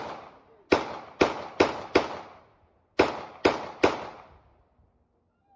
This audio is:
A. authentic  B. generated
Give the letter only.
A